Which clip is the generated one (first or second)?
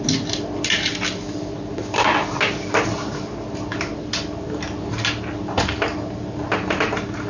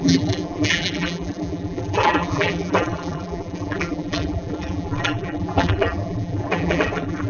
second